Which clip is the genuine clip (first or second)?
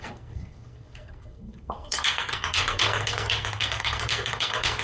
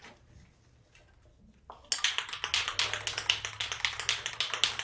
second